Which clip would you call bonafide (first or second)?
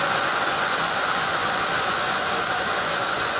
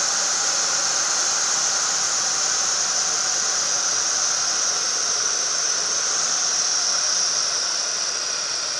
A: second